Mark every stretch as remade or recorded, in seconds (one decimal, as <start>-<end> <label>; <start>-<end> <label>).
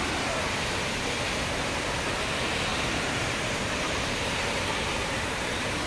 0.0-2.7 recorded; 2.7-5.9 remade